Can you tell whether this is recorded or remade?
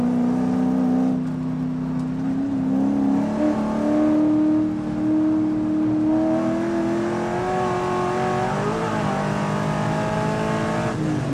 recorded